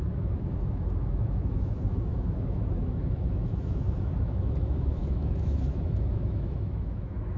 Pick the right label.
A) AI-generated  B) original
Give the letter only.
A